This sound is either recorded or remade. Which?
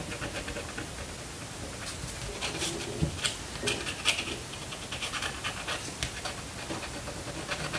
recorded